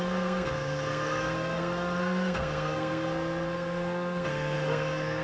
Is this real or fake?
fake